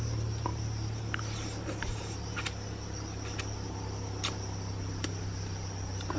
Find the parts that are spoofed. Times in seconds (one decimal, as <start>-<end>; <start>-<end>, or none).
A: none

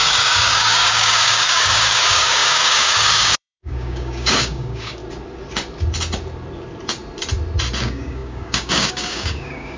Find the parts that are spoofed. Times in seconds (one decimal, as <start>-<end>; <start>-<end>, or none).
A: 0.0-5.0; 7.8-9.8